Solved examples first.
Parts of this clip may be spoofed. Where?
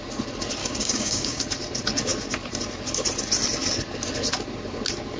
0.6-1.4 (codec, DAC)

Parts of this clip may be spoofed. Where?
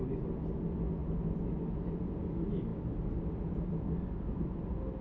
none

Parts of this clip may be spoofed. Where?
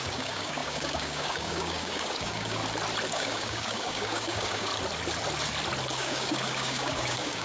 0.0-2.6 (codec, DAC); 3.1-4.7; 5.9-7.4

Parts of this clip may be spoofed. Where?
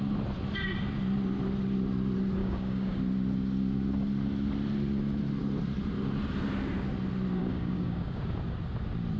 2.4-3.0 (codec, DAC); 7.4-8.2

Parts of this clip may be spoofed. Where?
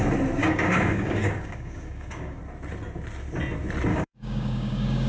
0.4-2.4 (codec, DAC); 3.9-5.1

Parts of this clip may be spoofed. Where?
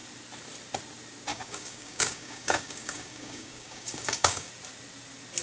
1.3-4.5 (codec, DAC)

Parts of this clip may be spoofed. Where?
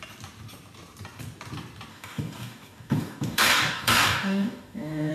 1.9-5.1 (codec, DAC)